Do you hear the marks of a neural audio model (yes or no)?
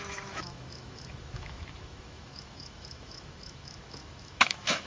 yes